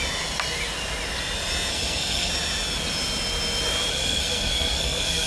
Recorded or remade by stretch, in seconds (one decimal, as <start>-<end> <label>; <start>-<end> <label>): 0.0-1.7 recorded; 1.7-2.3 remade; 2.3-3.9 recorded; 3.9-5.3 remade